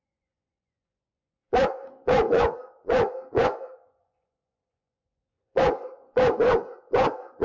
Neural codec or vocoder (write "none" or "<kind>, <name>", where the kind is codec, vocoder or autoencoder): vocoder, Vocos